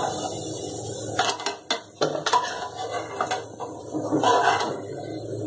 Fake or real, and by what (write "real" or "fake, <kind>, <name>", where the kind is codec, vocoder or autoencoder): real